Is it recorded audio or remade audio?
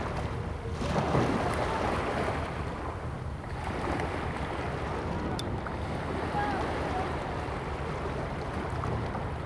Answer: recorded